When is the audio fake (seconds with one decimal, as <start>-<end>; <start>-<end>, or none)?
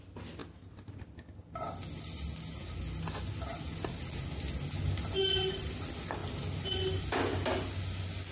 none